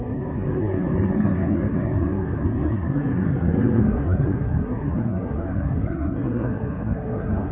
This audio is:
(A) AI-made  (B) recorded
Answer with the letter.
A